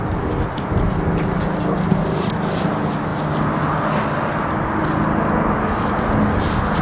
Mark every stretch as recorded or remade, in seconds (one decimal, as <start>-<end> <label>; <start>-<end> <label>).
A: 0.0-6.8 recorded